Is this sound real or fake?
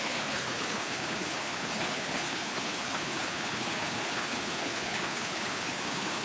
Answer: fake